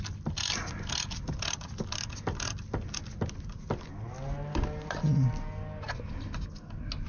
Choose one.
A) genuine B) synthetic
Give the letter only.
A